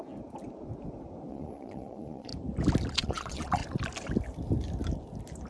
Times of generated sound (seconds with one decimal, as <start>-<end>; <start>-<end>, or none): 1.3-2.3; 2.9-3.6